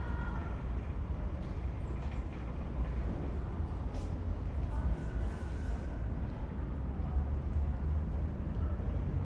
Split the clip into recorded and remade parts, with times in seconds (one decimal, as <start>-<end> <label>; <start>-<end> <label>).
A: 0.0-9.2 recorded